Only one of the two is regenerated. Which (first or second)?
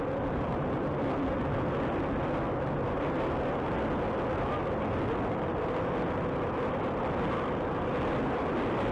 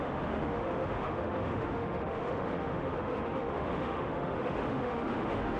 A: second